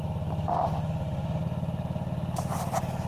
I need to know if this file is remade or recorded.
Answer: recorded